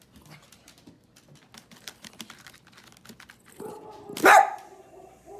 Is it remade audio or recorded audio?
recorded